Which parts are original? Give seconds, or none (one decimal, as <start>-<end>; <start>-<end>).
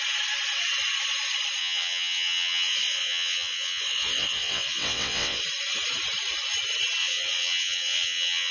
0.0-1.6; 5.4-7.0